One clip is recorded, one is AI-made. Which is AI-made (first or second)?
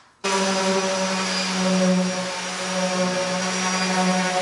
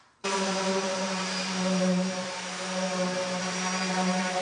second